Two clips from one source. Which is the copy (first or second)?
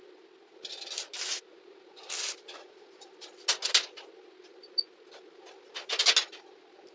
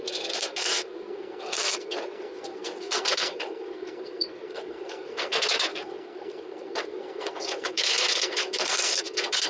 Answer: second